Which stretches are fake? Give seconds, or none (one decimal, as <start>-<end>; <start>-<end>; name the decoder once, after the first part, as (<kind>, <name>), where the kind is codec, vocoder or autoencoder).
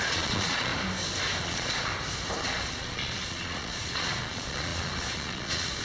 0.0-0.7 (vocoder, Vocos); 1.4-1.9; 2.4-5.8